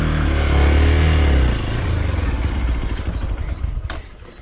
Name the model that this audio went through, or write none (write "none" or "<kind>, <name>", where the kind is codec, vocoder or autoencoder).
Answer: none